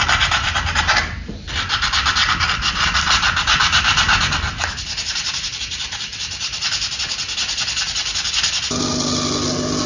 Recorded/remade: recorded